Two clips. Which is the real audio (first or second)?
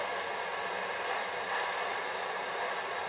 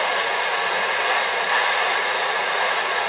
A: first